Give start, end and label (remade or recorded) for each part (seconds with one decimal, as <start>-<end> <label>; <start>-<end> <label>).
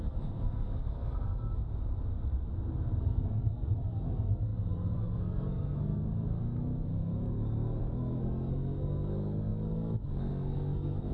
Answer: 0.0-1.5 remade; 1.5-3.0 recorded; 3.0-11.1 remade